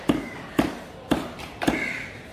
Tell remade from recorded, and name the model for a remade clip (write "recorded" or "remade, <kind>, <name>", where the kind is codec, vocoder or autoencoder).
recorded